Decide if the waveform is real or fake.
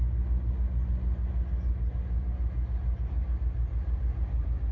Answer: real